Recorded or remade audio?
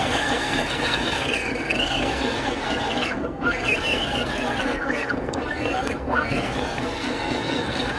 remade